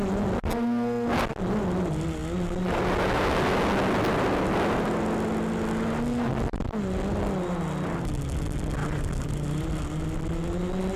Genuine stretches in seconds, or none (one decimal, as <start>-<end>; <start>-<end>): 0.0-8.8; 9.6-11.0